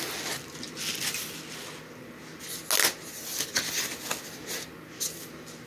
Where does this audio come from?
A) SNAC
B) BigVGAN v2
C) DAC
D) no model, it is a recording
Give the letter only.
D